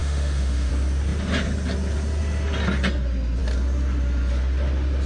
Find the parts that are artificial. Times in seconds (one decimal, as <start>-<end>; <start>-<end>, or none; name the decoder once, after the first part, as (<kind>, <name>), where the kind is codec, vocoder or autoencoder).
0.0-0.7 (autoencoder, DAC-VAE)